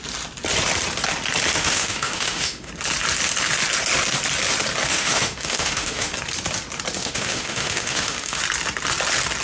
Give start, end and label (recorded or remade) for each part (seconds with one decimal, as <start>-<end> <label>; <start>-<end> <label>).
0.0-1.6 recorded; 1.6-2.7 remade; 2.7-4.9 recorded; 4.9-6.1 remade; 6.1-7.0 recorded; 7.0-8.4 remade; 8.4-9.4 recorded

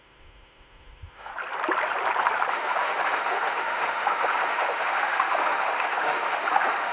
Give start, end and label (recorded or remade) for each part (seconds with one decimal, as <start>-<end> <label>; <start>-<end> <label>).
0.0-1.3 remade; 1.3-2.5 recorded; 2.5-6.9 remade

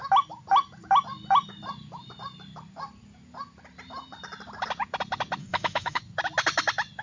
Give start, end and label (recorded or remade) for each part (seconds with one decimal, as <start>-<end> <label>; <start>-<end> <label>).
0.0-5.4 recorded; 5.4-6.0 remade; 6.0-7.0 recorded